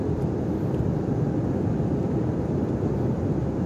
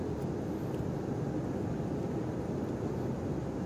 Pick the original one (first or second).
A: second